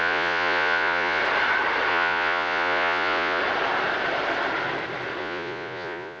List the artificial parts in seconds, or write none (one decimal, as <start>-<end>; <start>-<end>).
0.0-1.2; 1.9-3.4; 5.2-6.2